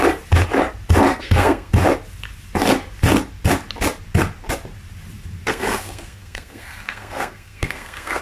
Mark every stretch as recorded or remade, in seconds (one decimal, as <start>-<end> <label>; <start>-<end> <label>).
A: 0.0-1.1 recorded; 1.1-1.7 remade; 1.7-5.5 recorded; 5.5-8.2 remade